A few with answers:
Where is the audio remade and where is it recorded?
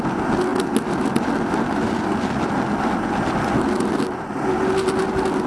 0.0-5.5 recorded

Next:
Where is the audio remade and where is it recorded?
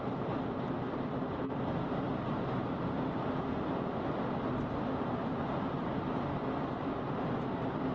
0.0-7.9 recorded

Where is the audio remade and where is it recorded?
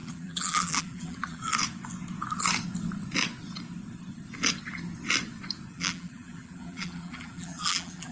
0.0-1.5 remade; 1.5-5.7 recorded; 5.7-8.1 remade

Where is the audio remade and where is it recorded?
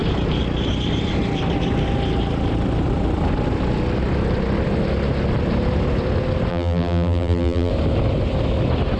0.0-6.5 recorded; 6.5-7.7 remade; 7.7-9.0 recorded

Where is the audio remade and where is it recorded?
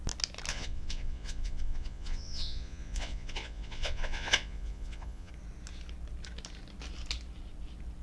0.0-0.5 recorded; 0.5-5.3 remade; 5.3-8.0 recorded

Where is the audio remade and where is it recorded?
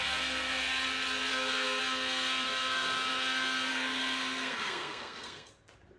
0.0-1.3 recorded; 1.3-1.8 remade; 1.8-3.7 recorded; 3.7-5.5 remade; 5.5-6.0 recorded